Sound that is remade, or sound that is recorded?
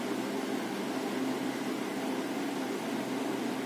recorded